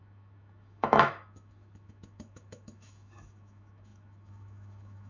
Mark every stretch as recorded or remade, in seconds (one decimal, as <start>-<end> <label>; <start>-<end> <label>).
0.0-5.1 remade